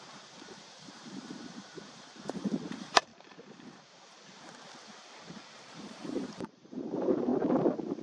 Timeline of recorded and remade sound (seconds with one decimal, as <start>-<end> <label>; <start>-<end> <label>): 0.0-3.1 remade; 3.1-5.7 recorded; 5.7-7.3 remade; 7.3-8.0 recorded

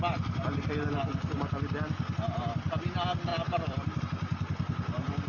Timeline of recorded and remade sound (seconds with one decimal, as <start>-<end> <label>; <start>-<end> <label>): 0.0-3.3 recorded; 3.3-4.0 remade; 4.0-5.3 recorded

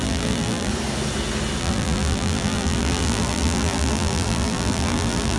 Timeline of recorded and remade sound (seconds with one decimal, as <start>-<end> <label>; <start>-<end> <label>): 0.0-0.7 remade; 0.7-1.6 recorded; 1.6-5.4 remade

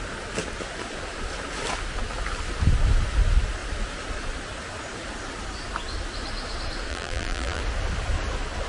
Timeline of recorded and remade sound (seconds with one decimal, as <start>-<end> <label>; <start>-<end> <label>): 0.0-6.9 recorded; 6.9-7.6 remade; 7.6-8.7 recorded